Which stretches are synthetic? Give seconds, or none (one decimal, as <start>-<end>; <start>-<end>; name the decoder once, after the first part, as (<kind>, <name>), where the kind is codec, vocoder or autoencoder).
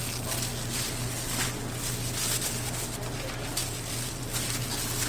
3.6-4.2 (vocoder, BigVGAN v2)